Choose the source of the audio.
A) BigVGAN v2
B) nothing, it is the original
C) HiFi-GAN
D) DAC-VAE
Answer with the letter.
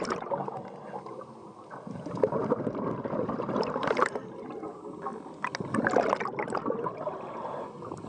B